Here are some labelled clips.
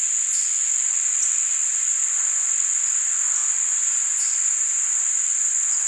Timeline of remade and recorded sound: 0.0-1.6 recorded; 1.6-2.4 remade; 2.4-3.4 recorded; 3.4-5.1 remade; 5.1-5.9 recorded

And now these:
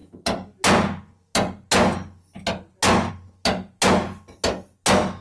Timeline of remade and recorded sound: 0.0-5.2 recorded

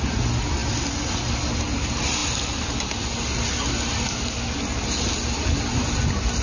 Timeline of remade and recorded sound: 0.0-6.4 recorded